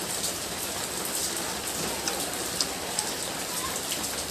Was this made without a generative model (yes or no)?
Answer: no